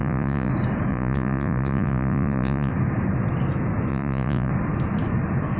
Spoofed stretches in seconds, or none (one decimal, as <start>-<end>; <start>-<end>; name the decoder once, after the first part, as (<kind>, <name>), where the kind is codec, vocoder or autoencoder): 0.0-0.5 (vocoder, Vocos); 0.9-2.7; 3.9-4.5